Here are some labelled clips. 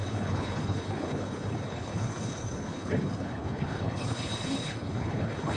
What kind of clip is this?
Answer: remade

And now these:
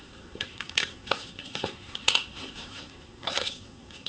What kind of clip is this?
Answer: remade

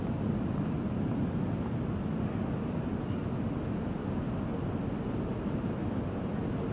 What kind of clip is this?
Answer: recorded